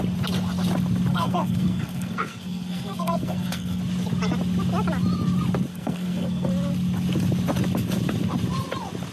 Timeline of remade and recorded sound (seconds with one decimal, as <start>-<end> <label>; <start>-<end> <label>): 0.0-1.1 recorded; 1.1-3.8 remade; 3.8-5.7 recorded; 5.7-6.5 remade; 6.5-9.1 recorded